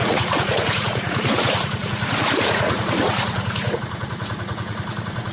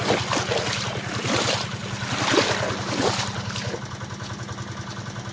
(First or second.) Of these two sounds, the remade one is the first